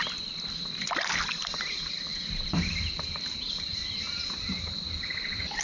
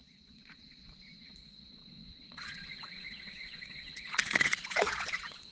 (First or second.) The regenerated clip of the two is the second